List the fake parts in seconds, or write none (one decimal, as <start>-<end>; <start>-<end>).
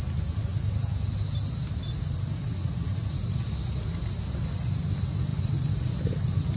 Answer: none